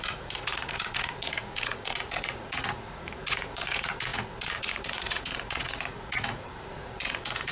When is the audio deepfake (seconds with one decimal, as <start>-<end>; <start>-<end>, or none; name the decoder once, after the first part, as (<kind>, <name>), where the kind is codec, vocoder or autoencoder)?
0.0-7.5 (vocoder, Vocos)